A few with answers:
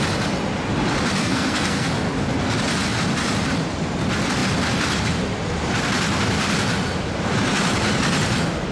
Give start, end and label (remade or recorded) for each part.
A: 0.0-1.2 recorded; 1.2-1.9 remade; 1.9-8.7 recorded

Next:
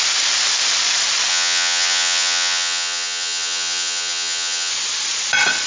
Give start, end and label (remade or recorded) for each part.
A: 0.0-1.3 recorded; 1.3-4.7 remade; 4.7-5.7 recorded

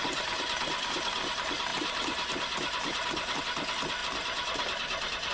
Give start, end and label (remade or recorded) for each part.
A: 0.0-1.7 recorded; 1.7-3.4 remade; 3.4-4.0 recorded; 4.0-5.3 remade